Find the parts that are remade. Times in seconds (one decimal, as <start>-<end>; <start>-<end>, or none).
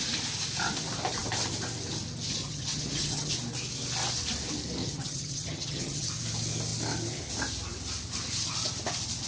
2.4-3.3; 4.8-6.1